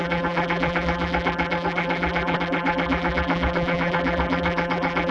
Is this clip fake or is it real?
fake